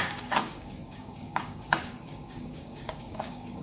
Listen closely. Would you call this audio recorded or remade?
remade